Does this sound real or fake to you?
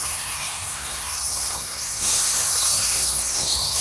fake